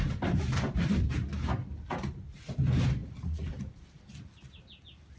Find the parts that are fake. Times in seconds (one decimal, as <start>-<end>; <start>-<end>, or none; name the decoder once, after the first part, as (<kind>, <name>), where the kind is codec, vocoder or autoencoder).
none